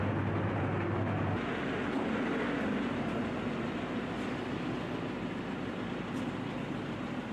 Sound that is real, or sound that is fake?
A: real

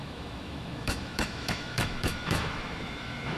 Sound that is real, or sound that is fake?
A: fake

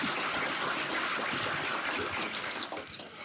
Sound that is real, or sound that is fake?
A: real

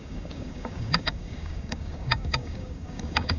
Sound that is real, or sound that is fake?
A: fake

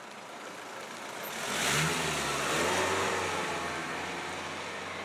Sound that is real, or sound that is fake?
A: real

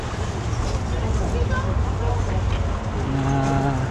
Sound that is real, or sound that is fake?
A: real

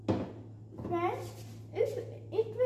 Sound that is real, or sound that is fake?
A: real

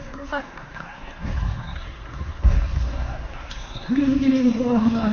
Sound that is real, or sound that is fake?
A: fake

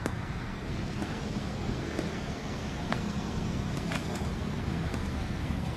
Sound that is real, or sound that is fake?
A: fake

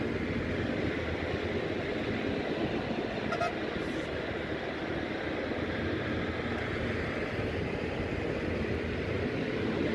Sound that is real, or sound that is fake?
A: real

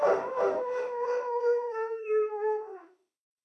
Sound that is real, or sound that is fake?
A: fake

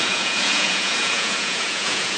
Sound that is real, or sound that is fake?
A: fake